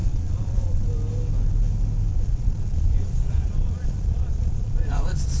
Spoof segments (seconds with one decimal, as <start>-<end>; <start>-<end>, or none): 0.0-0.9; 2.1-5.4